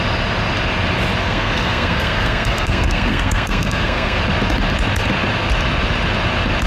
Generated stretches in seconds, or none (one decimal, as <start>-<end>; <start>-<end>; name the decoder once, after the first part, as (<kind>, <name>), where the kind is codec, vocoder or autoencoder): 1.2-4.2 (codec, SNAC)